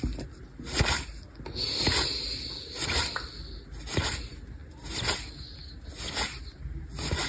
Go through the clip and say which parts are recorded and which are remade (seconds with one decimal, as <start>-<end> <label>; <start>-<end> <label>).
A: 0.0-7.3 recorded

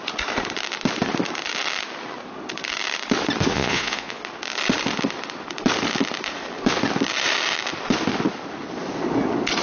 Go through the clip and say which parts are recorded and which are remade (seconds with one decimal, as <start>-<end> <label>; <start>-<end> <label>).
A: 0.0-3.5 recorded; 3.5-4.2 remade; 4.2-9.6 recorded

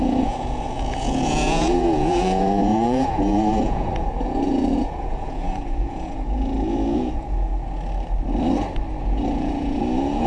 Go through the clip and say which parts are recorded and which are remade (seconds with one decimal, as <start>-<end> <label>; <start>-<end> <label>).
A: 0.0-7.5 remade; 7.5-9.0 recorded; 9.0-10.3 remade

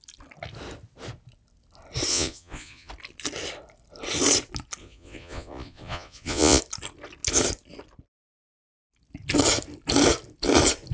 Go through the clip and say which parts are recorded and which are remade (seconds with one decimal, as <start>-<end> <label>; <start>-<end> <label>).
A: 0.0-2.1 recorded; 2.1-2.9 remade; 2.9-4.8 recorded; 4.8-6.6 remade; 6.6-10.9 recorded

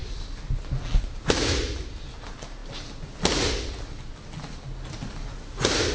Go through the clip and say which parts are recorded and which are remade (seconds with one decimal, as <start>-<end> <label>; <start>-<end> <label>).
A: 0.0-5.9 recorded

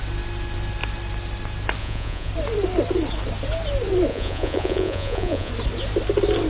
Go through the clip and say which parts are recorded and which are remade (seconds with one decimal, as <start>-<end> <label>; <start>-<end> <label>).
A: 0.0-1.8 recorded; 1.8-2.3 remade; 2.3-4.1 recorded; 4.1-5.5 remade; 5.5-6.5 recorded

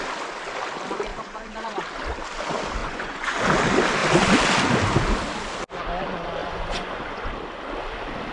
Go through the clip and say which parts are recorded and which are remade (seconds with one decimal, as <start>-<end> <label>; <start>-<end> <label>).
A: 0.0-1.1 recorded; 1.1-1.8 remade; 1.8-2.8 recorded; 2.8-3.4 remade; 3.4-6.4 recorded; 6.4-7.3 remade; 7.3-8.3 recorded

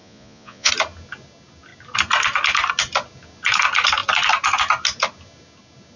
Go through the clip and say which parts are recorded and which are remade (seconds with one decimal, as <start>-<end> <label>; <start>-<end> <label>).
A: 0.0-0.7 remade; 0.7-6.0 recorded